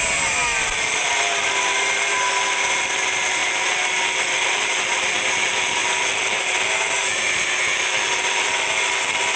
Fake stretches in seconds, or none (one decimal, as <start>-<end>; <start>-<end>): none